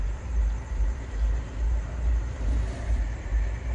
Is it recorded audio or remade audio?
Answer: remade